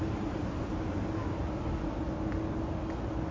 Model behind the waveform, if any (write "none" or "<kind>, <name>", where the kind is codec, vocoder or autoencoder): none